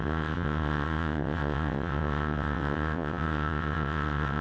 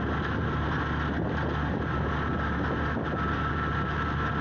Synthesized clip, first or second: first